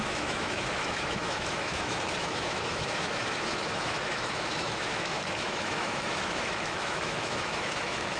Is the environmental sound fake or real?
fake